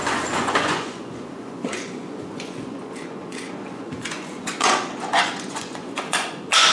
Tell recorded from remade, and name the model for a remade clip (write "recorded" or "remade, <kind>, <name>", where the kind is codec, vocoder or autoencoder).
remade, vocoder, Vocos